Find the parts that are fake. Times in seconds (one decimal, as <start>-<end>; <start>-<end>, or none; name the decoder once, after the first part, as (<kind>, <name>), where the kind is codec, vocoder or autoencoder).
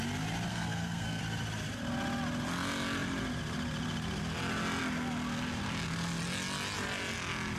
0.5-1.2 (codec, SNAC)